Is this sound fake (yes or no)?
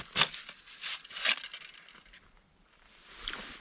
no